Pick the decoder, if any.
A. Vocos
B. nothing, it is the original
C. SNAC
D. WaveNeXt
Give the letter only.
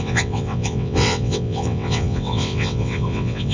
D